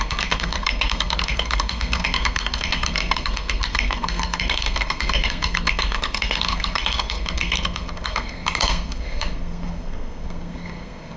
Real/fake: fake